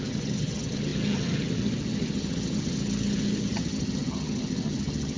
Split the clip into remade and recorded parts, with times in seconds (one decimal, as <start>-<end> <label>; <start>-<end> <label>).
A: 0.0-5.2 remade